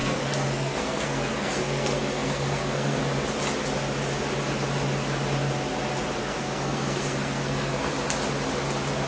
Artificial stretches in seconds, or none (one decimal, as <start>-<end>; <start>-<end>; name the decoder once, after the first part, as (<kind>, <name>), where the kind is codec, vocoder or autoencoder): 0.0-3.0 (codec, SNAC); 6.2-7.9